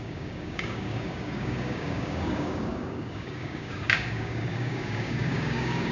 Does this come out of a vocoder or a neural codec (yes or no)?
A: yes